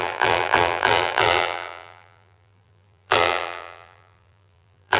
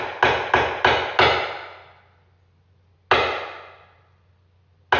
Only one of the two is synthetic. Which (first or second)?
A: first